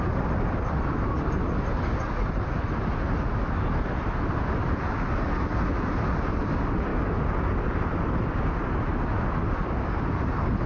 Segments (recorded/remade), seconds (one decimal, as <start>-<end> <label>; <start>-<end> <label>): 0.0-10.7 recorded